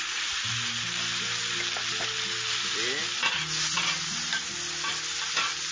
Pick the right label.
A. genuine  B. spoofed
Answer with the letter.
A